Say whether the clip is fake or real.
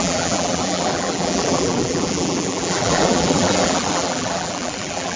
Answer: fake